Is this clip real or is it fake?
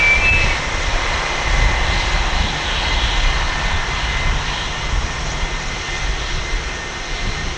real